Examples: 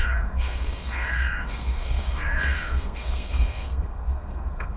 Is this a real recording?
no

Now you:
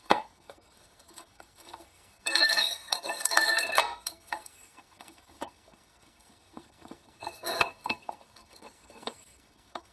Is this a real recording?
no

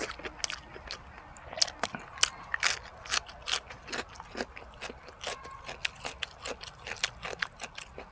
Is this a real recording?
yes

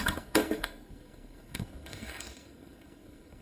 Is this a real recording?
no